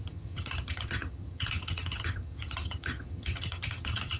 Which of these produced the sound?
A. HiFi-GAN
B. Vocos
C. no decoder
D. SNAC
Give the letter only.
A